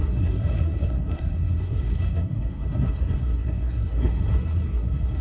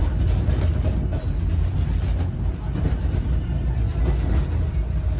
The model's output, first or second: first